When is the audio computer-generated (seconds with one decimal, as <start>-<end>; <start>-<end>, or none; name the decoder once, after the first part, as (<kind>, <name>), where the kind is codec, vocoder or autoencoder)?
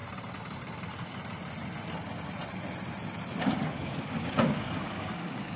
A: 3.4-5.6 (codec, DAC)